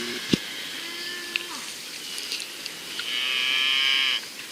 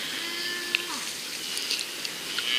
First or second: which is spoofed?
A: first